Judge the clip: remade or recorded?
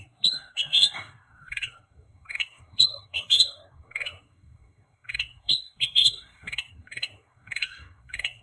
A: remade